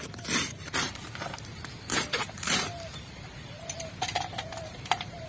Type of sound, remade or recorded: remade